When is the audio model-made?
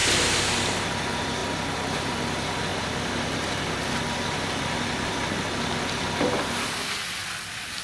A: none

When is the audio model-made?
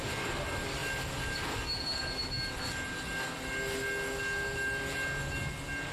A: none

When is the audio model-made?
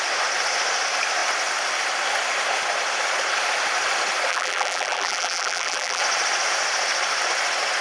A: 4.3-6.0 (vocoder, BigVGAN v2)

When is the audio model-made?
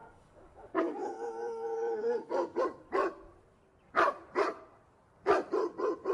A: 0.0-2.6 (codec, DAC)